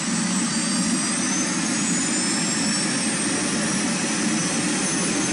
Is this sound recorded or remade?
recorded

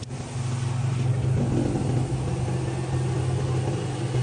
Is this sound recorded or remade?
recorded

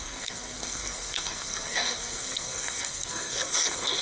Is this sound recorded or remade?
remade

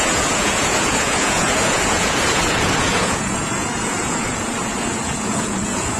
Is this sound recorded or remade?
remade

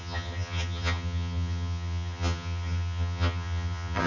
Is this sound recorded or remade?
remade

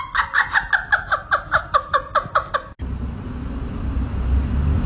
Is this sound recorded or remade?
recorded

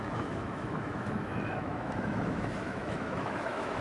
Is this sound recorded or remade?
remade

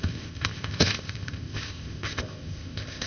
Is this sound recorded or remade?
remade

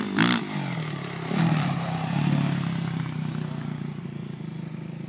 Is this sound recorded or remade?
recorded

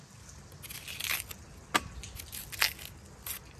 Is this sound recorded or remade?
recorded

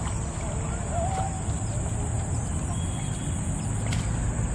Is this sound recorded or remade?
recorded